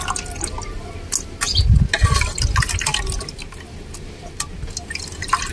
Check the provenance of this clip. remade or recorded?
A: recorded